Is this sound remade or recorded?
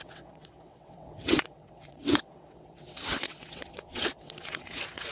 remade